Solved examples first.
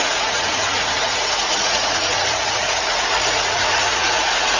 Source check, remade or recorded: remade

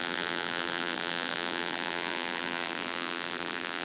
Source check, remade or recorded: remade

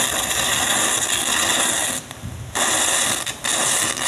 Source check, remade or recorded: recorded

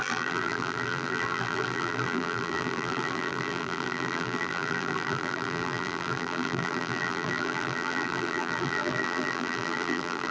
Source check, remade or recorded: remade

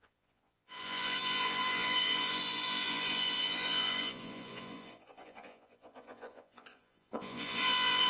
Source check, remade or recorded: remade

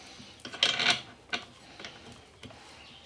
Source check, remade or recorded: recorded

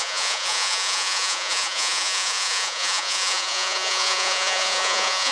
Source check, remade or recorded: remade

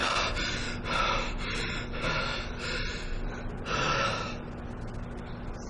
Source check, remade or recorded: recorded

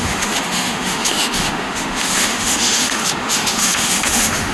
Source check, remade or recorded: remade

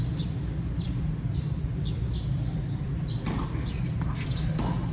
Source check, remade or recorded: recorded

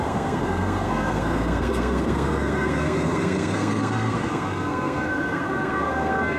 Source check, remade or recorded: remade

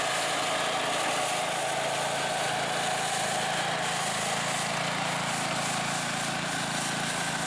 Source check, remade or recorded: recorded